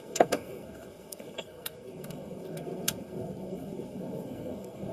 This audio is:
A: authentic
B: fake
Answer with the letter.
B